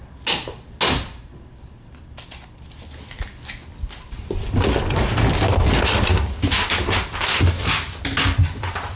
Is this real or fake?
real